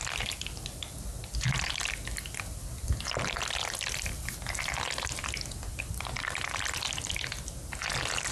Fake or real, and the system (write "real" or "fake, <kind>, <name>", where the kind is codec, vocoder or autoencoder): real